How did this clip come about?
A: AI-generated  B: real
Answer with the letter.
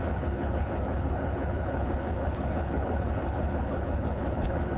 A